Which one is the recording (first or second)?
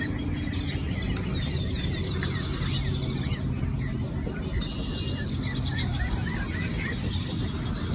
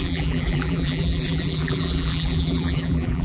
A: first